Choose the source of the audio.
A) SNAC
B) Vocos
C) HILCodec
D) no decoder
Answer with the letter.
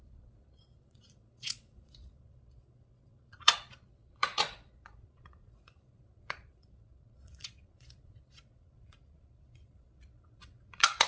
B